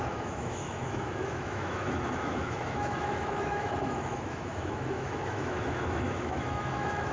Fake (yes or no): yes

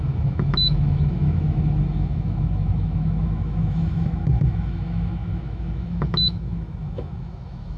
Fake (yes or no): yes